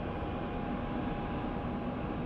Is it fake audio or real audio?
real